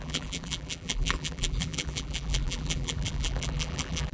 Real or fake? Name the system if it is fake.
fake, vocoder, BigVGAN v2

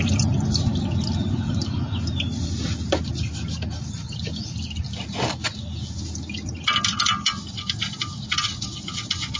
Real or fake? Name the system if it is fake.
real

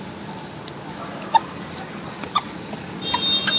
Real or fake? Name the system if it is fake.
real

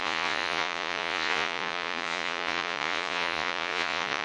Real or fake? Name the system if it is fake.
fake, vocoder, Vocos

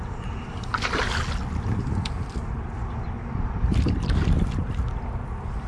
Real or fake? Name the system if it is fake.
real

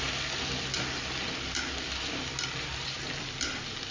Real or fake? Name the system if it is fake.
real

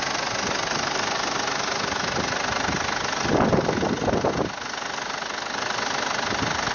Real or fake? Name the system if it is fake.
real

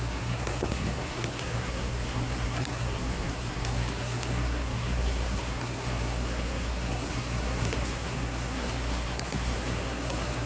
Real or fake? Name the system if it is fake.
fake, codec, SNAC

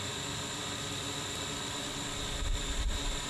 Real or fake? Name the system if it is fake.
fake, vocoder, BigVGAN v2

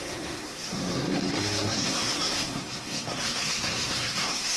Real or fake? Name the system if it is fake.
fake, codec, SNAC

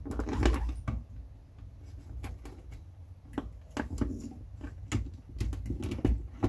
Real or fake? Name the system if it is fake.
real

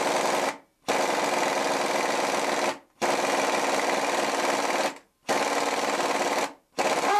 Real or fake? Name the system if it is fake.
real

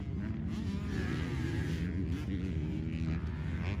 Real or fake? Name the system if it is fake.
real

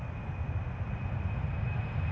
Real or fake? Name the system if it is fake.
real